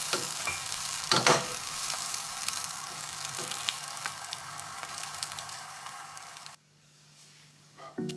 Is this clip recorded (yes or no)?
no